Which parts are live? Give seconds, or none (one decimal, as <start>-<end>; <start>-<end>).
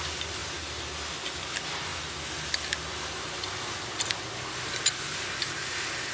0.0-6.1